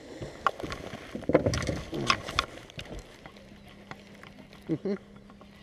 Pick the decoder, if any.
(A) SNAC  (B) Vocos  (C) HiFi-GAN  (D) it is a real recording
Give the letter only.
D